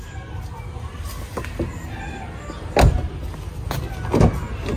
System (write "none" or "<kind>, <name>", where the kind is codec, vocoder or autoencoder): none